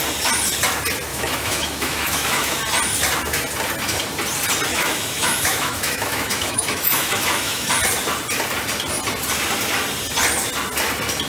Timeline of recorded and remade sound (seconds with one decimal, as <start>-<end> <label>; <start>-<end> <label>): 0.0-1.1 recorded; 1.1-2.6 remade; 2.6-4.7 recorded; 4.7-7.7 remade; 7.7-11.3 recorded